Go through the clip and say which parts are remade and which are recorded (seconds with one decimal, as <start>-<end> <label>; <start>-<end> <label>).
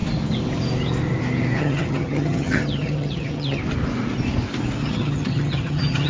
0.0-1.6 recorded; 1.6-3.6 remade; 3.6-4.8 recorded; 4.8-6.1 remade